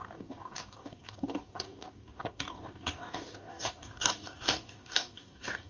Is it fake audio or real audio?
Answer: fake